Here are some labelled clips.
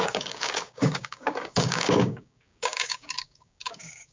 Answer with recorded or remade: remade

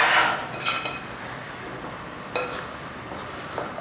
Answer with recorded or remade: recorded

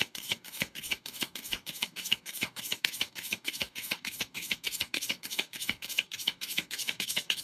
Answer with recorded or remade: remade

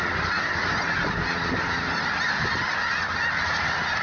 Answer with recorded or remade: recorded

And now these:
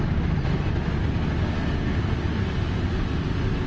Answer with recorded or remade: recorded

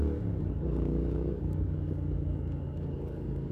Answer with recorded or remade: remade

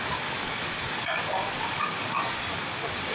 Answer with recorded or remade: remade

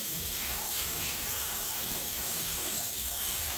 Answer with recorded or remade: remade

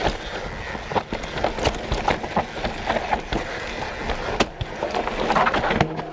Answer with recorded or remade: recorded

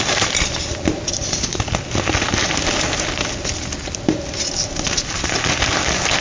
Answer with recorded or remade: recorded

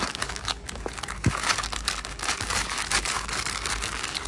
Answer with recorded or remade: remade